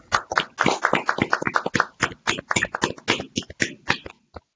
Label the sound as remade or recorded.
recorded